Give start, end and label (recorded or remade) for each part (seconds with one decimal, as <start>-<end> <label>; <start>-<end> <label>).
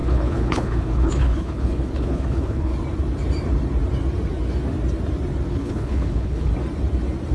0.0-2.7 remade; 2.7-5.5 recorded; 5.5-6.5 remade; 6.5-7.3 recorded